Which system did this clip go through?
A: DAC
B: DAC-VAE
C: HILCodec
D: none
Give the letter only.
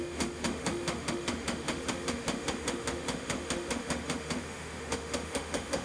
B